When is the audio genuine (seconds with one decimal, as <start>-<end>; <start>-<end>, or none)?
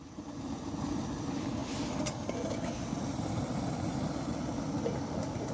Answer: none